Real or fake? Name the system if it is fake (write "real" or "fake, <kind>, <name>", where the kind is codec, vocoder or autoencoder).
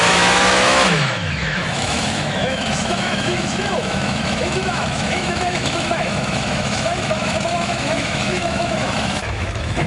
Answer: fake, autoencoder, DAC-VAE